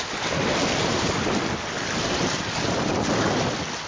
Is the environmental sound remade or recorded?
recorded